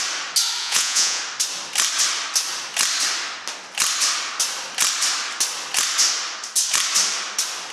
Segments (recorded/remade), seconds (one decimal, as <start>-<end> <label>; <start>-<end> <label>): 0.0-0.6 recorded; 0.6-1.2 remade; 1.2-7.7 recorded